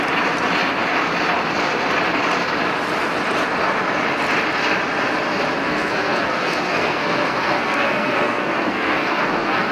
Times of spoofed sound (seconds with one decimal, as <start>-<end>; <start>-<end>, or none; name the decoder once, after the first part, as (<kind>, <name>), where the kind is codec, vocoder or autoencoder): 5.6-9.7 (codec, SNAC)